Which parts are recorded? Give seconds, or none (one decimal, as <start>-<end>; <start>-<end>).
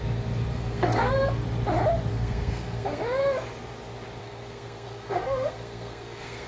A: 0.0-0.5; 1.1-2.1; 3.0-4.2